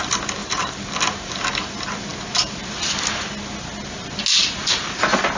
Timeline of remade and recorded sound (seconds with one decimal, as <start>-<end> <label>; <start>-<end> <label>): 0.0-0.4 recorded; 0.4-0.9 remade; 0.9-5.4 recorded